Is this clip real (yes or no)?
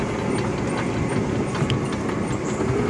yes